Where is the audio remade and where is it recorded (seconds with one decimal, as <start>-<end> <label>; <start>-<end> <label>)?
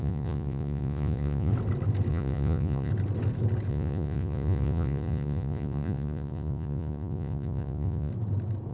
0.0-1.5 remade; 1.5-2.1 recorded; 2.1-2.9 remade; 2.9-3.7 recorded; 3.7-8.1 remade; 8.1-8.7 recorded